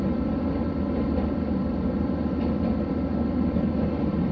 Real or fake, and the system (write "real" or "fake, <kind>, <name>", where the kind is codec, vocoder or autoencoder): real